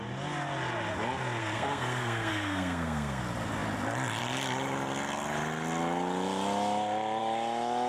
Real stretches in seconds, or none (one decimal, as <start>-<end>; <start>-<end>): 0.0-1.4; 3.2-7.9